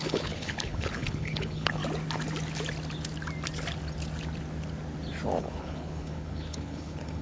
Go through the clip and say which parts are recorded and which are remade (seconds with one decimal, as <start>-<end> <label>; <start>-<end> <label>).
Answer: 0.0-1.8 remade; 1.8-5.4 recorded; 5.4-7.2 remade